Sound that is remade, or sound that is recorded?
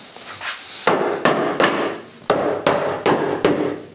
recorded